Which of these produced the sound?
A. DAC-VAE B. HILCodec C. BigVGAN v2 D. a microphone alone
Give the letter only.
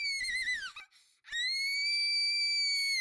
D